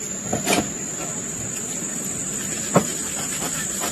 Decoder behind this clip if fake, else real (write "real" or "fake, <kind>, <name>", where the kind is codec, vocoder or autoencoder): fake, vocoder, BigVGAN v2